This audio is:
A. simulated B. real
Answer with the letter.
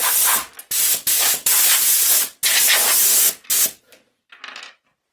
B